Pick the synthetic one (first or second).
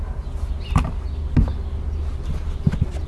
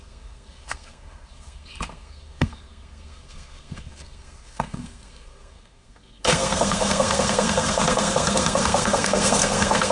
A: second